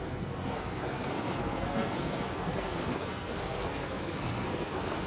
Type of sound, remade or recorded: remade